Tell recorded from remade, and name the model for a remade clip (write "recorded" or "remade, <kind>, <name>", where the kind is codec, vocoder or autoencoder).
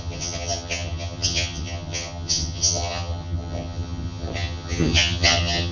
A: remade, vocoder, HiFi-GAN